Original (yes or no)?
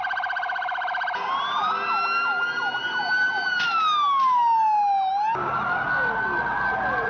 yes